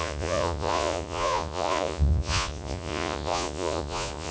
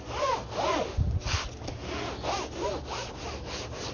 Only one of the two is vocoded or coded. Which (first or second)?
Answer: first